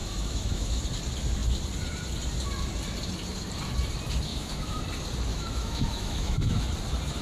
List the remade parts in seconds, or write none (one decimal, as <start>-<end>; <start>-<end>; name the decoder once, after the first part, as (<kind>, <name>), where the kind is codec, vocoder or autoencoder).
0.0-0.8 (autoencoder, DAC-VAE); 4.3-4.8; 5.3-6.6